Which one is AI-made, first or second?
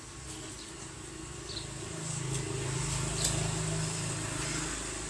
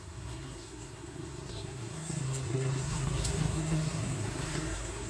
second